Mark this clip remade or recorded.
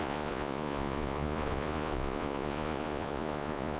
remade